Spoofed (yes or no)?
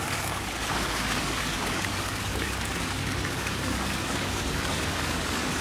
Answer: yes